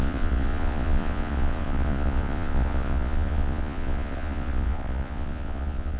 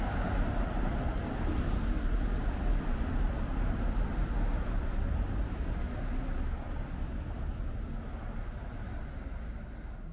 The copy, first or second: first